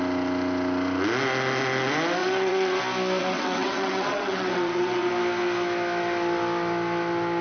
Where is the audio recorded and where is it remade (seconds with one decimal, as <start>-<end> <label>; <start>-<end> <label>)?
0.0-2.2 recorded; 2.2-2.8 remade; 2.8-3.2 recorded; 3.2-5.1 remade; 5.1-7.4 recorded